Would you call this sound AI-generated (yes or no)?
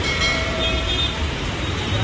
yes